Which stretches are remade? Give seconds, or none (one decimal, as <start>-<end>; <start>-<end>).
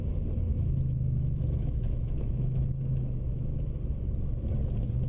0.5-3.6